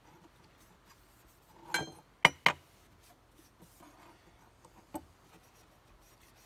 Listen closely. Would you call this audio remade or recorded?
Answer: recorded